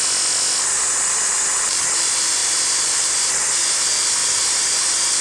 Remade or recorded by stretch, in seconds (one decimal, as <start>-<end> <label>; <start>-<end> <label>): 0.0-2.4 recorded; 2.4-3.6 remade; 3.6-4.2 recorded; 4.2-4.7 remade; 4.7-5.2 recorded